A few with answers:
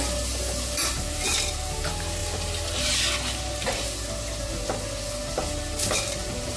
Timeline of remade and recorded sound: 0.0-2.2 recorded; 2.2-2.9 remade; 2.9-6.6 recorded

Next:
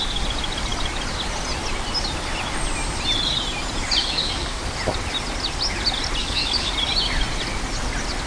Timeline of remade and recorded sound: 0.0-4.0 recorded; 4.0-4.6 remade; 4.6-6.2 recorded; 6.2-6.7 remade; 6.7-8.3 recorded

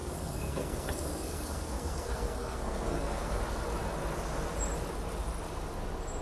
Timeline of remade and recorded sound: 0.0-3.4 remade; 3.4-6.2 recorded